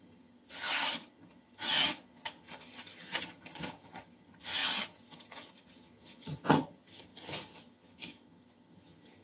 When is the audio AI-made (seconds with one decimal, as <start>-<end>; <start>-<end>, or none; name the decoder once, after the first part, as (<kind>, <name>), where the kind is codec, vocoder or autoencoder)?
0.0-9.2 (vocoder, HiFi-GAN)